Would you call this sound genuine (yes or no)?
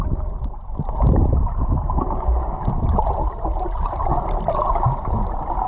yes